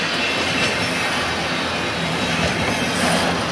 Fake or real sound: real